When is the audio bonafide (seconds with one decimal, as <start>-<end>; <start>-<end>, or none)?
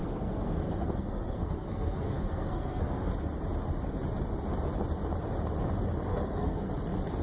3.1-6.1; 6.7-7.2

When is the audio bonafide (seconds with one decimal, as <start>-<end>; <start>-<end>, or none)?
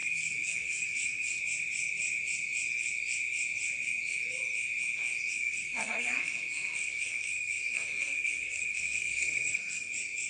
1.4-5.3; 9.9-10.3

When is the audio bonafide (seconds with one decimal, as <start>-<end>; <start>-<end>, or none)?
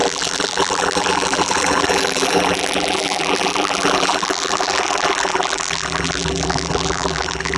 none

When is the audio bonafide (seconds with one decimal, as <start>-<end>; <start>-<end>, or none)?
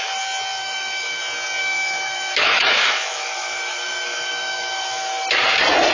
0.0-0.6; 1.2-1.6; 5.1-5.9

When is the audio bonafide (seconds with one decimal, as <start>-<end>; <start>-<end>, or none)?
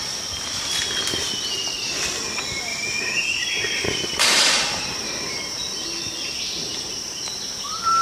0.0-2.7; 6.1-6.7; 7.2-8.0